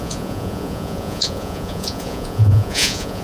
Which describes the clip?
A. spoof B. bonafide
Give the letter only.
A